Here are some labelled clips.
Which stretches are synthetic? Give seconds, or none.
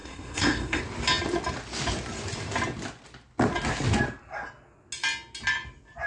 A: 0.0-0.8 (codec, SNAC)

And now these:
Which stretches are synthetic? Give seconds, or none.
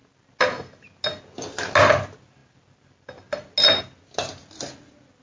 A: none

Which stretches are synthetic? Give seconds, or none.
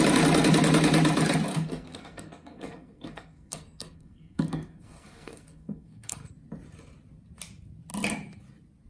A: 1.5-6.3 (codec, SNAC)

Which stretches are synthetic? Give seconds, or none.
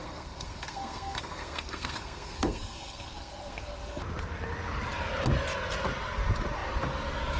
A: 0.0-4.0 (codec, SNAC)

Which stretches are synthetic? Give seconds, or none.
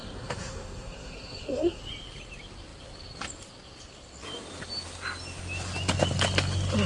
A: 0.0-1.8 (codec, SNAC)